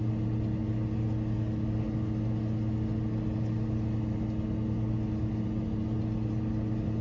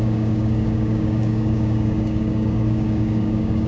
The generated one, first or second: second